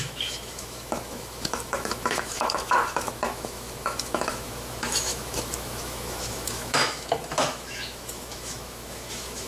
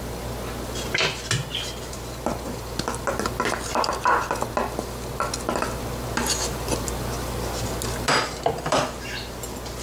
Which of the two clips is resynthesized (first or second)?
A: first